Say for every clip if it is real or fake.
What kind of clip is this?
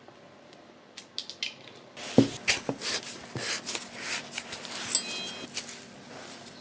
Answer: real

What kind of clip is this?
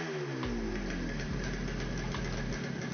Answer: real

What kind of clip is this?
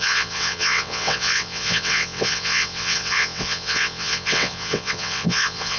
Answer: fake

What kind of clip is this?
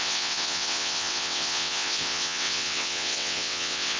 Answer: fake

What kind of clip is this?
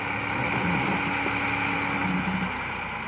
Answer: real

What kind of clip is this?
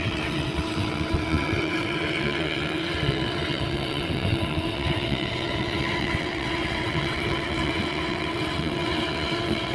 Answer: fake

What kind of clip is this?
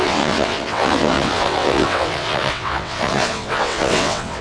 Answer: fake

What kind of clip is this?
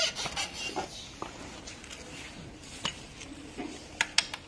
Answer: real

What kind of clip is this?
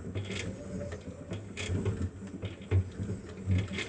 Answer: real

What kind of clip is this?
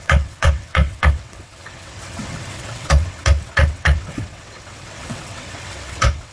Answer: fake